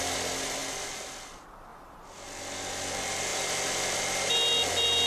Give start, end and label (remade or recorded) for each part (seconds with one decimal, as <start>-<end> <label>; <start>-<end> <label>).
0.0-5.1 recorded